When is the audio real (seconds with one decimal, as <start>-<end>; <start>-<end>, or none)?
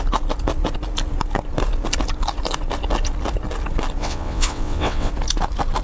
0.0-4.0; 5.1-5.8